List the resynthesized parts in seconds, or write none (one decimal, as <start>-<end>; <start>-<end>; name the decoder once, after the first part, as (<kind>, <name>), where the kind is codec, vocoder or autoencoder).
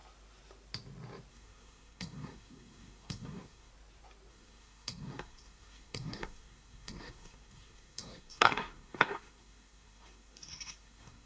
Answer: 1.3-3.7 (codec, SNAC); 4.3-11.3